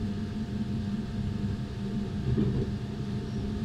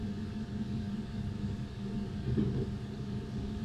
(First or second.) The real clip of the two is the first